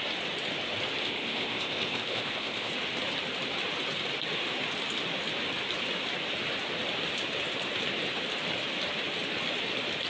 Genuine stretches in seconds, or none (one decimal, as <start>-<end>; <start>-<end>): 0.0-1.0; 2.7-10.1